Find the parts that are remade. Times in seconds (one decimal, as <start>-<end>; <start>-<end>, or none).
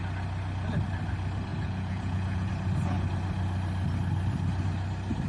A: 1.5-2.5